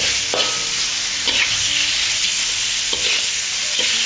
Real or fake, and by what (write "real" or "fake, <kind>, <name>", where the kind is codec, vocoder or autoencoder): real